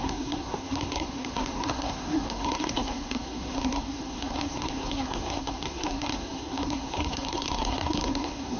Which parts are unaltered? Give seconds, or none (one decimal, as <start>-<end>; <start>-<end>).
none